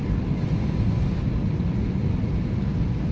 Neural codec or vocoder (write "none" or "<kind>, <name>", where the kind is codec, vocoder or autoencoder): none